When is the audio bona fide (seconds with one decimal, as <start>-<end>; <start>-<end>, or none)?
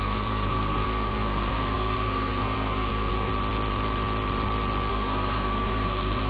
3.3-4.9